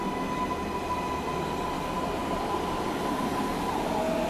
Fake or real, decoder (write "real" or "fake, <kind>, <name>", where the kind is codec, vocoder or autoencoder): real